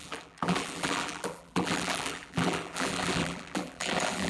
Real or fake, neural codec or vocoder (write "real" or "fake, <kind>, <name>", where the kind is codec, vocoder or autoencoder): fake, vocoder, BigVGAN v2